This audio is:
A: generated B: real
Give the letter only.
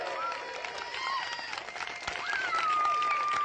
B